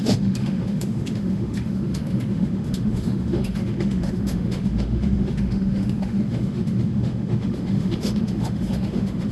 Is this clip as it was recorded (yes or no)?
no